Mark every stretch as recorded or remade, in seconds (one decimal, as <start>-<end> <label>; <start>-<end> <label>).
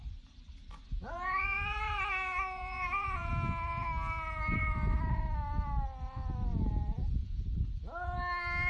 0.0-0.9 recorded; 0.9-3.3 remade; 3.3-6.5 recorded; 6.5-7.4 remade; 7.4-8.7 recorded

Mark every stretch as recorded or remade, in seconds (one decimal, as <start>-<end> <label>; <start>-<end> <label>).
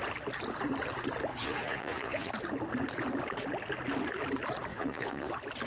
0.0-1.3 recorded; 1.3-2.3 remade; 2.3-4.7 recorded; 4.7-5.3 remade; 5.3-5.7 recorded